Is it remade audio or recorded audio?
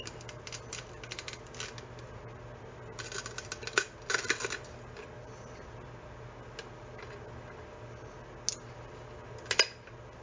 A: recorded